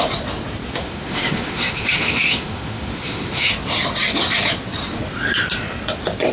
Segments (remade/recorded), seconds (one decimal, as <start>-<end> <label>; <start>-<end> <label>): 0.0-0.8 recorded; 0.8-3.5 remade; 3.5-6.3 recorded